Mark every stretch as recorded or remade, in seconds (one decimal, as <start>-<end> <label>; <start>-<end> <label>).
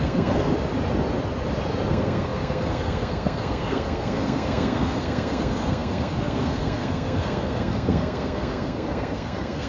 0.0-0.5 remade; 0.5-1.9 recorded; 1.9-9.7 remade